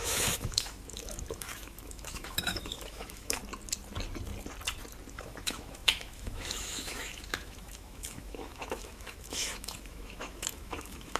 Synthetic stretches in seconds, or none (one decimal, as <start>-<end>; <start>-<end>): 0.0-3.4; 5.1-11.2